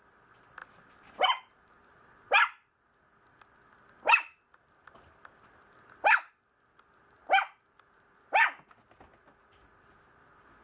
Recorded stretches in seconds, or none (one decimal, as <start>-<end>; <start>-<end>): 0.0-10.6